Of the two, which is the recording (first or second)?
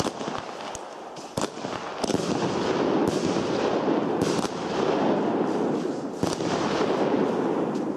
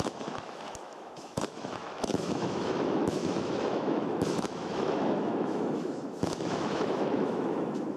first